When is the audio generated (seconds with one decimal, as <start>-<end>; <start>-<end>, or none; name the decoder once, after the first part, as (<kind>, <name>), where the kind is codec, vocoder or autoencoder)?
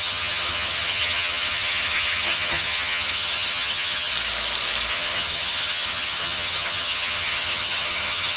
0.0-4.1 (vocoder, HiFi-GAN); 4.9-8.4